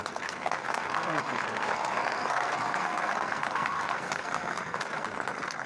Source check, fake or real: fake